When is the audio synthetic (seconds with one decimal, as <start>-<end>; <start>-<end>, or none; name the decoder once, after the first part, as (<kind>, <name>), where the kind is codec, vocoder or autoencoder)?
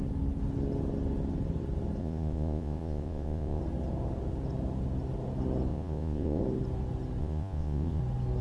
2.0-3.6 (vocoder, Vocos); 5.7-6.4; 7.2-8.0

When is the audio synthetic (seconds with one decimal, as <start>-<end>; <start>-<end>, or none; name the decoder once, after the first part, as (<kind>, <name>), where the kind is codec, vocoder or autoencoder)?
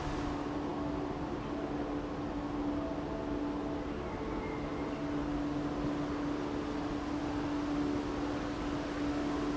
none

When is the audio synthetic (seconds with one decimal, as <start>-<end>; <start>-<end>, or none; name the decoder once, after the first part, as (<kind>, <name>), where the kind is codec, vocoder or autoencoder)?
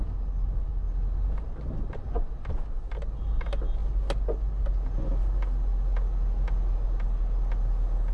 none